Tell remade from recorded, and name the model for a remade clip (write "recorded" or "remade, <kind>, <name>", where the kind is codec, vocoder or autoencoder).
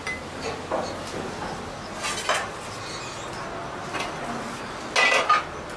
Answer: recorded